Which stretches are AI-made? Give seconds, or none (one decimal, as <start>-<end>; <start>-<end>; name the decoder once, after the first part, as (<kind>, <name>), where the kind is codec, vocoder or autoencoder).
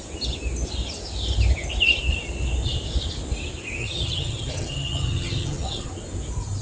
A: 3.8-5.9 (vocoder, HiFi-GAN)